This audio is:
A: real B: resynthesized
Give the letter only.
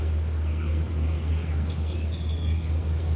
B